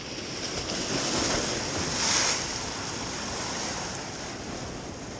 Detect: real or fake real